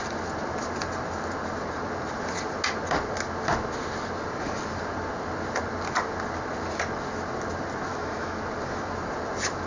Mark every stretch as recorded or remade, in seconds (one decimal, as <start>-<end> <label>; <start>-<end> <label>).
0.0-7.9 recorded; 7.9-8.4 remade; 8.4-9.7 recorded